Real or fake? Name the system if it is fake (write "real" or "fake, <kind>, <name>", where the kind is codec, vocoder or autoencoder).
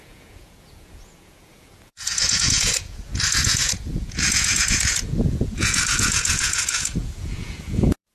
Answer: fake, vocoder, Vocos